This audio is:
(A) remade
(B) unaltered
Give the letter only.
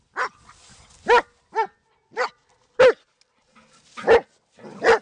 B